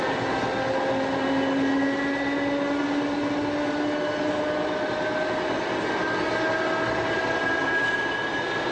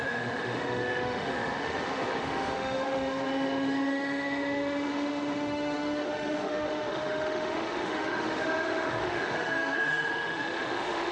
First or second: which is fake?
second